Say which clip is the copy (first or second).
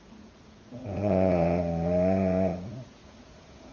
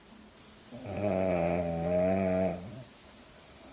first